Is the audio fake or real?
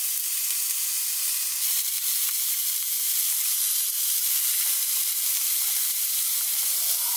fake